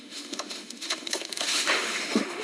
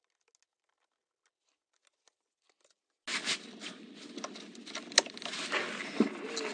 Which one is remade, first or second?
first